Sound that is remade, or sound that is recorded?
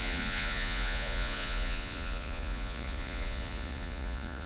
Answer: remade